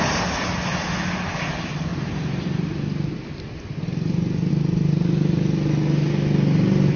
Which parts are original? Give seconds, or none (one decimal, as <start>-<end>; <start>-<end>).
0.0-7.0